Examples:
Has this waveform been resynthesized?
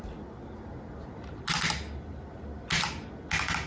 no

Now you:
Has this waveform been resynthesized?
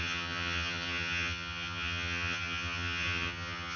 yes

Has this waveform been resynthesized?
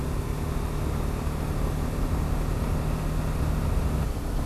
no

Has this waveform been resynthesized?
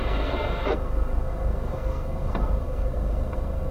yes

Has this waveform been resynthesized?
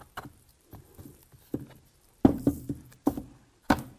no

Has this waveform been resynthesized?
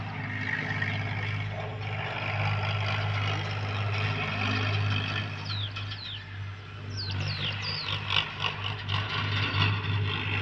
no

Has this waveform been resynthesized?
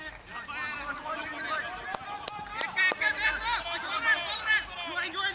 no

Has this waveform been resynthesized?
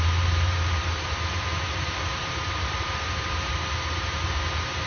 yes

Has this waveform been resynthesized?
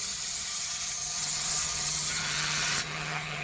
yes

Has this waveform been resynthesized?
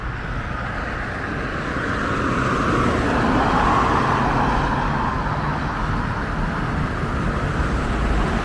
no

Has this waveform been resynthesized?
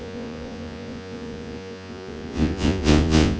yes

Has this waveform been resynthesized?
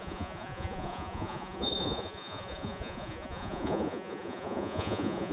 yes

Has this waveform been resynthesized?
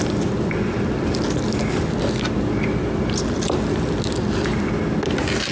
no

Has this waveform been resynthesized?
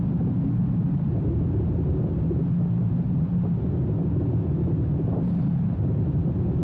no